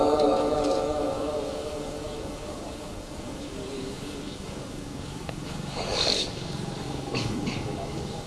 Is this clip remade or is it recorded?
remade